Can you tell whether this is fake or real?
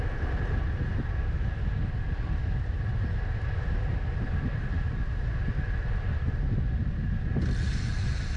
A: real